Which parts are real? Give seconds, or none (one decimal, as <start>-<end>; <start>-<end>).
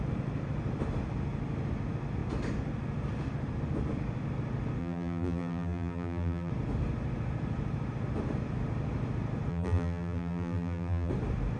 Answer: 0.0-4.8; 6.5-9.5; 11.1-11.6